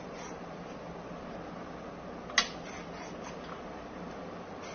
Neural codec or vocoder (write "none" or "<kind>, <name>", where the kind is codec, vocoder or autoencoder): none